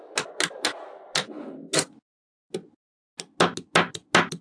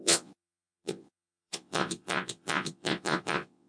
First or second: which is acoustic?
first